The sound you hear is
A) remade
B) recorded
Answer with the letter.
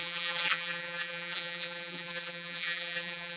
A